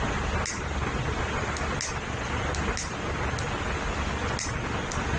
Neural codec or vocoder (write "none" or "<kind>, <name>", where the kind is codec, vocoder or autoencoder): none